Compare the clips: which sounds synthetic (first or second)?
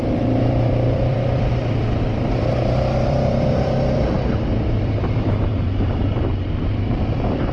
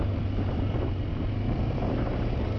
first